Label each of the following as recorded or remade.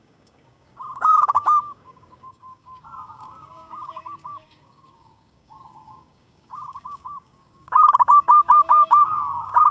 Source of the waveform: remade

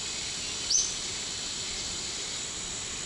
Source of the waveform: recorded